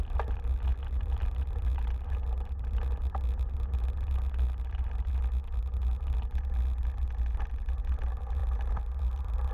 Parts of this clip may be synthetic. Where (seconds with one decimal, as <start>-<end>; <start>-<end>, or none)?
none